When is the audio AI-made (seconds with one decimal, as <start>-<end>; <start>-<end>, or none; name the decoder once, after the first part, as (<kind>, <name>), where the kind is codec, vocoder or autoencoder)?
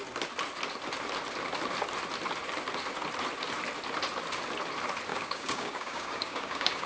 5.1-6.9 (codec, DAC)